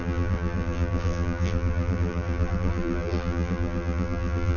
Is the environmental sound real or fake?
fake